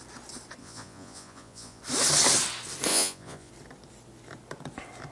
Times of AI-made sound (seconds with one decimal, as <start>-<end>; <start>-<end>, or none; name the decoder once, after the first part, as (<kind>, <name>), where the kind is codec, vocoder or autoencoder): 0.6-1.8 (vocoder, Vocos); 2.9-3.5